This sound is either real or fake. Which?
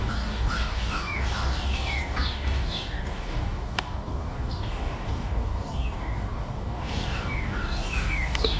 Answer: fake